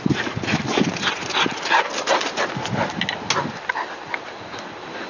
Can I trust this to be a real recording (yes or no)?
yes